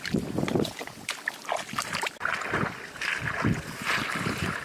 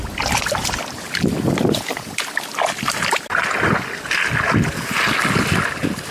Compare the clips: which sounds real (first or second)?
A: second